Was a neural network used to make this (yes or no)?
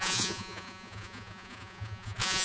yes